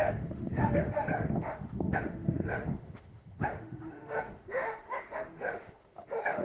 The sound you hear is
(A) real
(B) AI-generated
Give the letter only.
B